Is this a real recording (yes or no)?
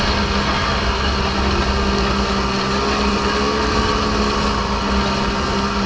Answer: yes